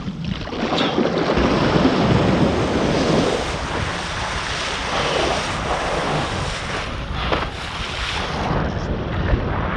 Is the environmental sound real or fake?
real